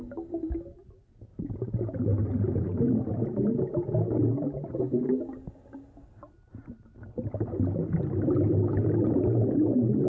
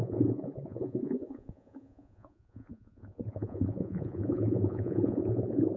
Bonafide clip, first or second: first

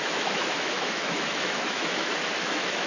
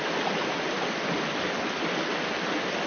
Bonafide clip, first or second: second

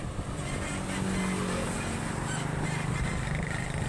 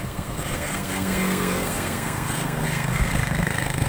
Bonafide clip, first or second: first